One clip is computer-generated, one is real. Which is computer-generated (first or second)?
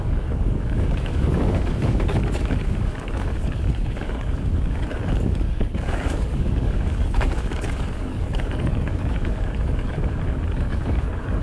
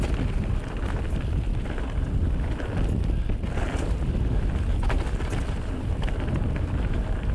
first